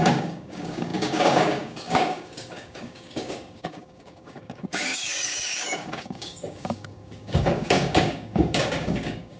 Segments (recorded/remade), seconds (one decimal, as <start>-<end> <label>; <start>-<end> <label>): 0.0-9.4 remade